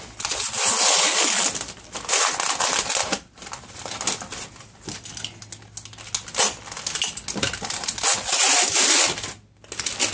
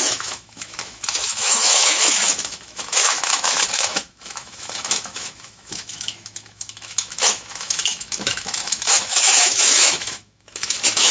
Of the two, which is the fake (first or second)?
second